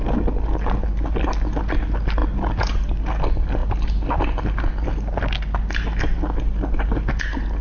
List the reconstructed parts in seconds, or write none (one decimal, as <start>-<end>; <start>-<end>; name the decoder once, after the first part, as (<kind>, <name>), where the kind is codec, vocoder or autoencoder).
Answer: none